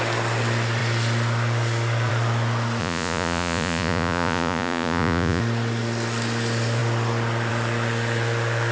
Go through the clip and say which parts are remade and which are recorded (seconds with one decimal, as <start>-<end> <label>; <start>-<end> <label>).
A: 0.0-2.8 recorded; 2.8-5.4 remade; 5.4-8.7 recorded